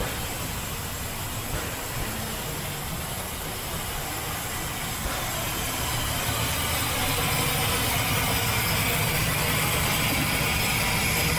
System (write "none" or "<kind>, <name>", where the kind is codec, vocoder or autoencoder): none